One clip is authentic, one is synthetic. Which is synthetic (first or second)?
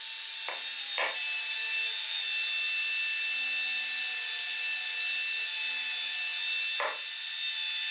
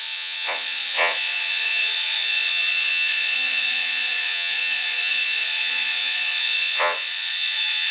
second